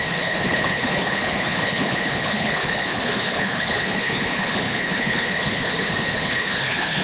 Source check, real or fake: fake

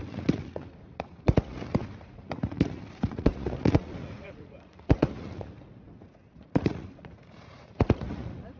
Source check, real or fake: fake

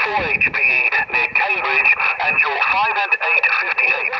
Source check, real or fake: fake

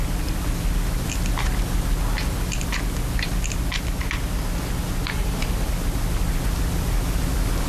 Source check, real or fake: real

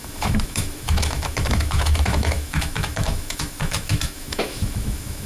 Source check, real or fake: fake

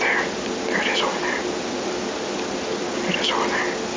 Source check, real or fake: real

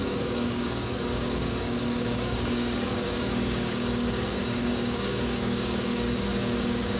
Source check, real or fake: fake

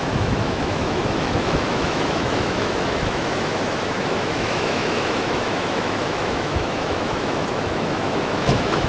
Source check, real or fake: fake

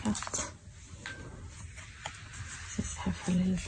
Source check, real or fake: real